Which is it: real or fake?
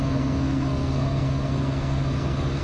fake